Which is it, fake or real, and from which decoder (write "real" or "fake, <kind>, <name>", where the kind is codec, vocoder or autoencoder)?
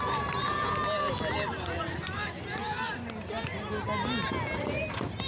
real